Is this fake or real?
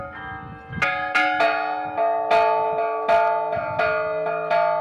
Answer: real